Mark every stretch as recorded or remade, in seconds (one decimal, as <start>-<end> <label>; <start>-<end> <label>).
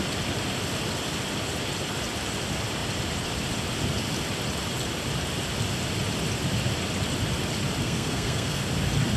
0.0-7.8 recorded; 7.8-8.6 remade; 8.6-9.2 recorded